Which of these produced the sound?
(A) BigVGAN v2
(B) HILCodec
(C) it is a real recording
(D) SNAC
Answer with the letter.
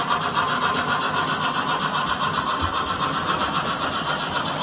C